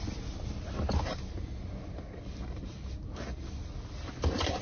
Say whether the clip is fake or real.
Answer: real